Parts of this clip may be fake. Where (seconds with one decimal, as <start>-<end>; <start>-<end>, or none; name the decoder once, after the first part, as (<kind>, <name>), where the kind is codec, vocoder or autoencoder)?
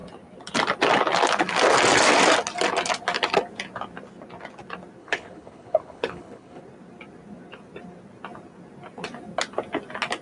5.0-6.6 (codec, HILCodec)